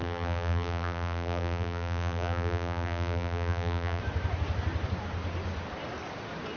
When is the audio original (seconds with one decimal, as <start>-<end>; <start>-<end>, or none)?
4.0-6.6